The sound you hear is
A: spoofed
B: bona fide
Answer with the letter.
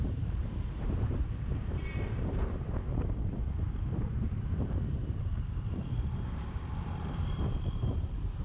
A